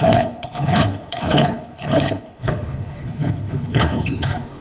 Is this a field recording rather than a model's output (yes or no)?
no